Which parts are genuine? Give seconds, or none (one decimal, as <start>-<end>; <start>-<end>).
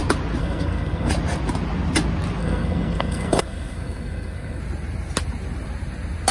0.0-0.4; 1.1-2.4; 4.6-6.3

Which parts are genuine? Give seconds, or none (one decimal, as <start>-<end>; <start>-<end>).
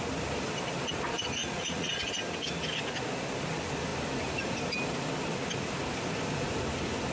0.0-1.4; 1.9-7.1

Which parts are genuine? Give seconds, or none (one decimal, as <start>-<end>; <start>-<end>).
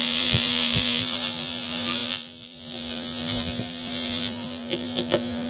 none